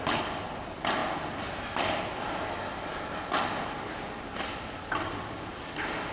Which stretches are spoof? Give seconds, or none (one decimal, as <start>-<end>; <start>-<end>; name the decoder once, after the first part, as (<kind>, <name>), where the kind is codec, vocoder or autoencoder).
none

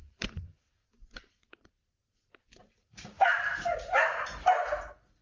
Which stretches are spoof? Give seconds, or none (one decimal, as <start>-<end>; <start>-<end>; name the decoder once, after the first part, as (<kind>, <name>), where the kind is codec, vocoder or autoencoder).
0.0-5.2 (vocoder, BigVGAN v2)